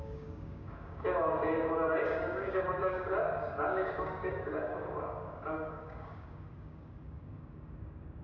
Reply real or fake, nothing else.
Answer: fake